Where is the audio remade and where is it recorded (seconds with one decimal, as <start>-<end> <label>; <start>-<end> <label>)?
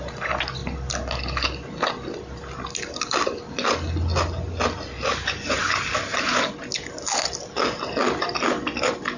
0.0-9.2 recorded